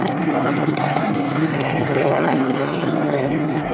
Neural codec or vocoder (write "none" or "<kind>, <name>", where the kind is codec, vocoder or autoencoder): codec, SNAC